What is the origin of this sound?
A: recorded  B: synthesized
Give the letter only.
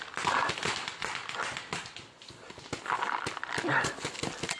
A